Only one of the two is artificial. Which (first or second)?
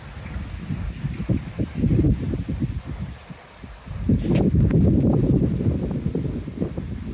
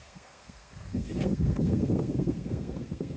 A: second